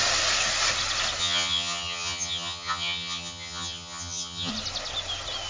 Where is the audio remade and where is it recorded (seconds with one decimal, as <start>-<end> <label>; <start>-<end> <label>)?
0.0-1.2 recorded; 1.2-4.5 remade; 4.5-5.5 recorded